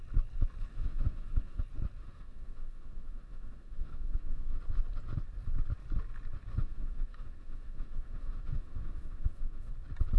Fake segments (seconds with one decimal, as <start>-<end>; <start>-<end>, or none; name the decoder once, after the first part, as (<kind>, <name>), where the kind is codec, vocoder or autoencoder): 0.7-1.6 (autoencoder, DAC-VAE); 2.0-4.6; 6.5-9.7